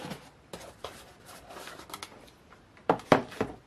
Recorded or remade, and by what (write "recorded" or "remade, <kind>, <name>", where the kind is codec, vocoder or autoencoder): recorded